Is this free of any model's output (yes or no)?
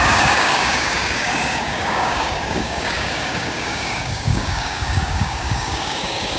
no